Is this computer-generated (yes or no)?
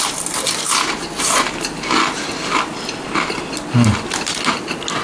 no